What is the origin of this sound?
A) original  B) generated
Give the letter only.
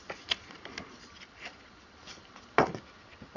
A